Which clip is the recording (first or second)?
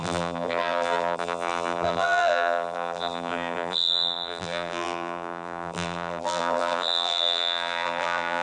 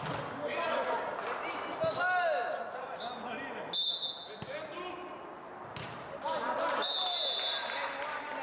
second